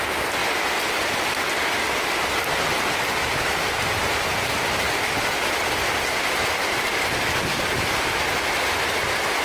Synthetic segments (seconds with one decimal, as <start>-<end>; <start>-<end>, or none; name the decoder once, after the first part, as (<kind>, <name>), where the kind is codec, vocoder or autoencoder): none